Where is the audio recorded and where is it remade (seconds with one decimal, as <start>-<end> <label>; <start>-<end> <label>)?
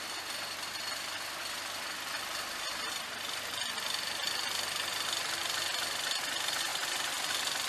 0.0-7.7 recorded